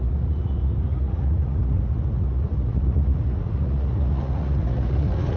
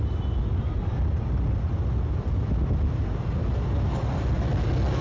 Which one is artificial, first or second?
first